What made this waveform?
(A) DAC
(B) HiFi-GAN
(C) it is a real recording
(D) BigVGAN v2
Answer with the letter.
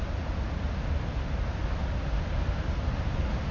C